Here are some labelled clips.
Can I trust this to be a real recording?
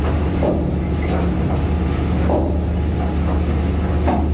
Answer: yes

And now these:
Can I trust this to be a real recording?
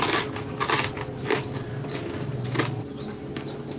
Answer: yes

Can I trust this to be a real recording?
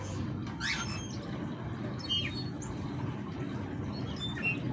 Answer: yes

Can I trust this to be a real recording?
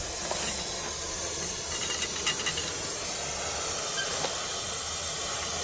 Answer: yes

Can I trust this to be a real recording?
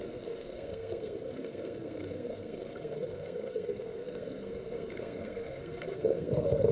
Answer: no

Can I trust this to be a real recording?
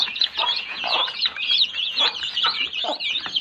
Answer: no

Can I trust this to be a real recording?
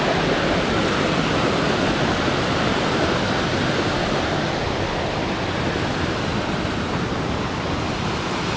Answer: yes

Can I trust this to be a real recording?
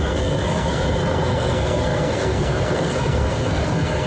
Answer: no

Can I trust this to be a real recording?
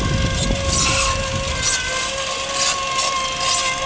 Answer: yes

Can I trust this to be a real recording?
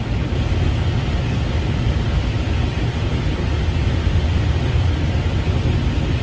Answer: yes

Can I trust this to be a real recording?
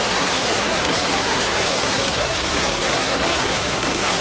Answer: no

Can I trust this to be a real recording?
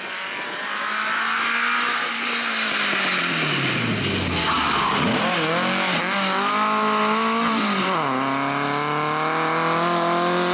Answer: yes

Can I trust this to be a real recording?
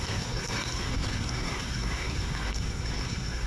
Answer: no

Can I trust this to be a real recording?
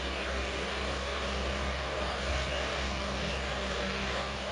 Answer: no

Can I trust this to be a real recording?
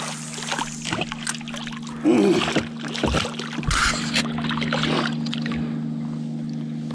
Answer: yes